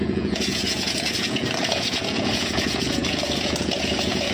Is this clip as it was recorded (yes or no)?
no